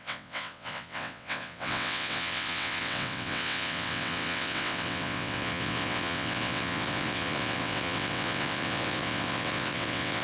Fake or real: fake